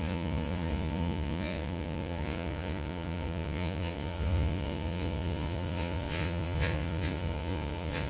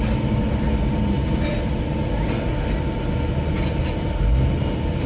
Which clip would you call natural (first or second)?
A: second